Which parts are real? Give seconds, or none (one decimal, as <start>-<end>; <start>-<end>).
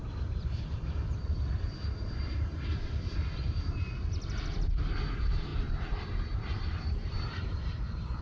0.0-8.2